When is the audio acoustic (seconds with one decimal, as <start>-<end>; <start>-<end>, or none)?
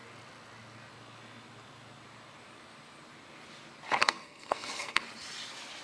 0.0-4.0; 5.0-5.8